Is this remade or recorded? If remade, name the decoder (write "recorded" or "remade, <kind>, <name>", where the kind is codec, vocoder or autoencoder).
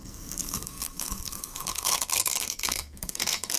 remade, codec, SNAC